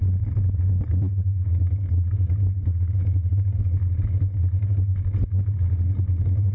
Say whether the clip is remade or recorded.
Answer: recorded